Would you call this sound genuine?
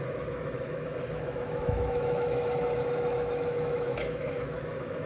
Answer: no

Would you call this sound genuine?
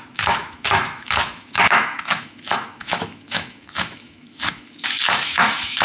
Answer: no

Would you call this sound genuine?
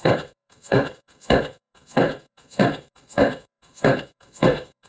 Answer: no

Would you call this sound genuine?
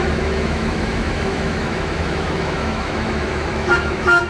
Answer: no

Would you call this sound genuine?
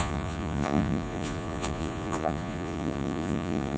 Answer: no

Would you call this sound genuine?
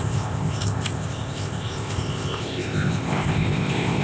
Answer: no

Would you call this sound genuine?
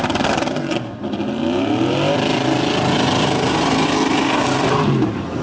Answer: yes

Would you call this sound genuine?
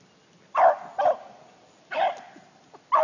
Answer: yes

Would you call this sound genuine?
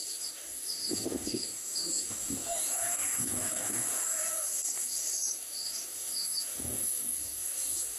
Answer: no